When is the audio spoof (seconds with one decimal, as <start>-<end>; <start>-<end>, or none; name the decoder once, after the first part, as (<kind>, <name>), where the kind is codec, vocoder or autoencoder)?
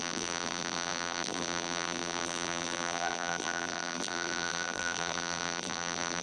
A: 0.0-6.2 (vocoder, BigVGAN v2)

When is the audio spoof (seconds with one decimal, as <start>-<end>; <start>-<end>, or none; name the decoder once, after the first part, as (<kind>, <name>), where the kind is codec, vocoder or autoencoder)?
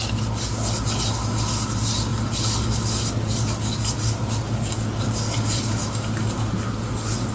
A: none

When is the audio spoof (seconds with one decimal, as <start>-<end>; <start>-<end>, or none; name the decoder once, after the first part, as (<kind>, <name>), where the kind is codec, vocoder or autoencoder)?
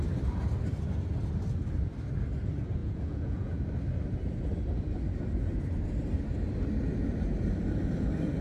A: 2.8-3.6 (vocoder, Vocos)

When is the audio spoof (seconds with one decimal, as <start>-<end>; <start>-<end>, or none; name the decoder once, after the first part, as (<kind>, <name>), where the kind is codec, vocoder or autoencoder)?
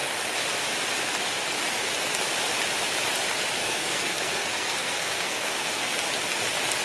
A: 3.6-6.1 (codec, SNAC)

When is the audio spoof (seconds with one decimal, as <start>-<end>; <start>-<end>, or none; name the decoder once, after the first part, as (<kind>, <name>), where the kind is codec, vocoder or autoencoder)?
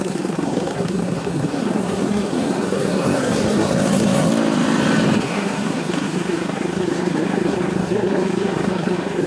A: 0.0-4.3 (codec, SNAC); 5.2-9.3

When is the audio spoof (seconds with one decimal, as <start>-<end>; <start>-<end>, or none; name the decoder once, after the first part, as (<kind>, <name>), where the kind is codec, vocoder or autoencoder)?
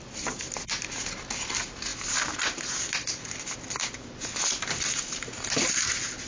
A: none